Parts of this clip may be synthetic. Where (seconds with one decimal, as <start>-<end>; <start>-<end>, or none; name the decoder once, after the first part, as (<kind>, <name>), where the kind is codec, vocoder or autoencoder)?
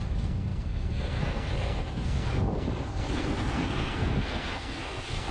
0.0-5.3 (codec, SNAC)